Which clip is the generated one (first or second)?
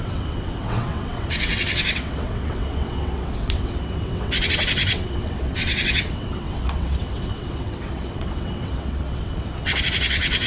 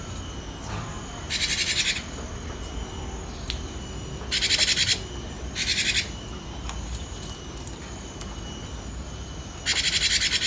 first